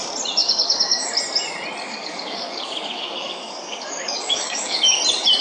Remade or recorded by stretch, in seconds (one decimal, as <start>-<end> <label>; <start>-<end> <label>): 0.0-0.4 recorded; 0.4-1.1 remade; 1.1-1.8 recorded; 1.8-5.0 remade; 5.0-5.4 recorded